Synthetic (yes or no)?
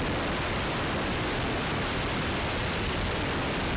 no